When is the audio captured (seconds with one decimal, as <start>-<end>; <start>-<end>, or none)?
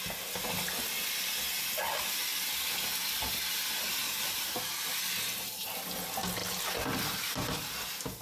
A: 0.0-8.2